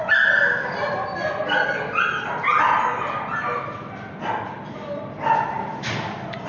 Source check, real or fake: real